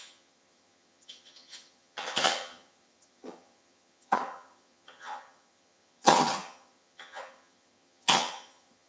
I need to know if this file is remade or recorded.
remade